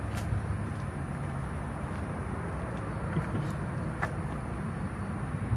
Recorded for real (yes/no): yes